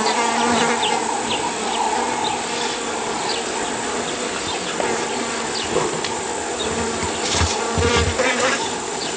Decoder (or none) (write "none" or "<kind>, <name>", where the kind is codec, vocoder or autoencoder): none